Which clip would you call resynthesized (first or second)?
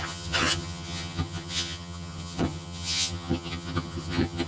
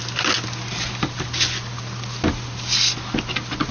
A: first